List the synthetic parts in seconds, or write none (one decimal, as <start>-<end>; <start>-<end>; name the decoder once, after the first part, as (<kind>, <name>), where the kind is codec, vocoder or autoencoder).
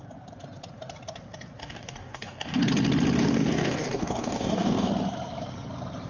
1.6-2.6 (codec, DAC); 3.2-4.9